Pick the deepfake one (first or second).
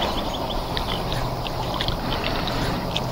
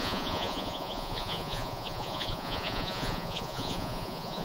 second